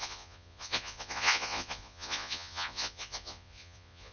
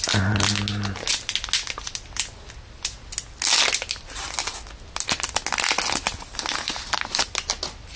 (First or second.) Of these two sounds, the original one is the second